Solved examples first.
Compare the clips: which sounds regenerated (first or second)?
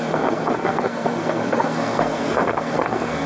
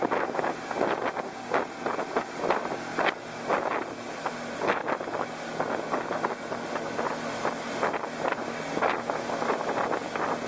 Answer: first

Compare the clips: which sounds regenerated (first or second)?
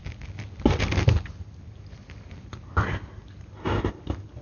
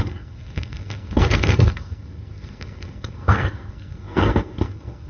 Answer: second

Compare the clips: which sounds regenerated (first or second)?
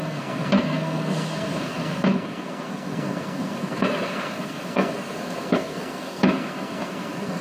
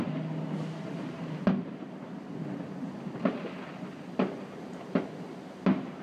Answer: first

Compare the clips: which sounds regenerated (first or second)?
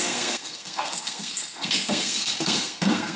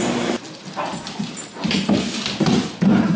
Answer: first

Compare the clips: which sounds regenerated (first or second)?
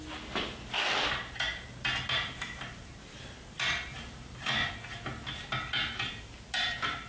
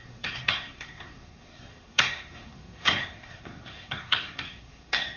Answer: second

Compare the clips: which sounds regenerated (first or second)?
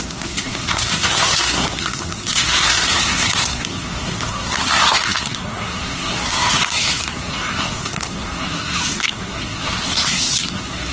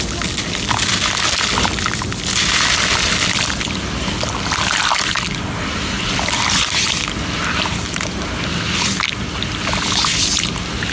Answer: first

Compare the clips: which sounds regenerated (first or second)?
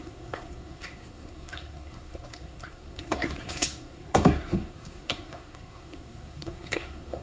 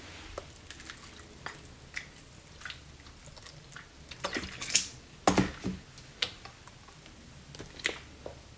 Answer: first